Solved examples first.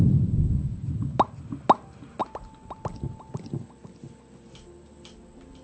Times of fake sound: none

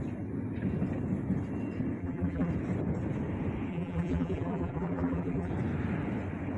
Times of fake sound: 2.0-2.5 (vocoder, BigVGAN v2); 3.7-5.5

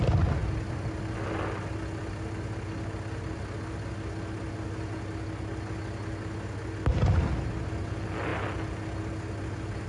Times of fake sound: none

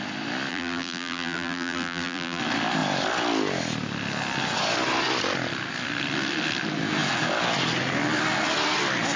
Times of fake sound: 0.5-2.4 (vocoder, BigVGAN v2)